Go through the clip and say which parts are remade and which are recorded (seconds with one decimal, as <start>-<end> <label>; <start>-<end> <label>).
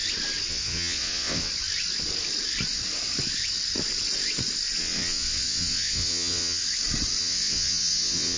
0.0-0.5 recorded; 0.5-1.5 remade; 1.5-4.8 recorded; 4.8-6.6 remade; 6.6-7.2 recorded; 7.2-8.4 remade